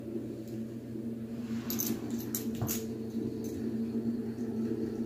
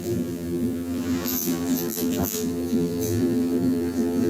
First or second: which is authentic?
first